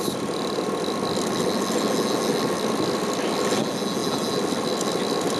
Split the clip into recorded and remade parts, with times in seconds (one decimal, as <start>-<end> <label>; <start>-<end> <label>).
0.0-5.4 recorded